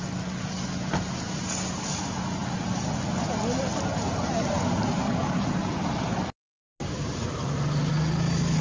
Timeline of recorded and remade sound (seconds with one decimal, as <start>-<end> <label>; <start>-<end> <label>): 0.0-8.6 recorded